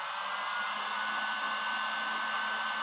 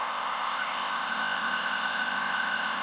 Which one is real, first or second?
first